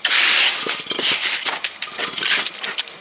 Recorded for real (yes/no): yes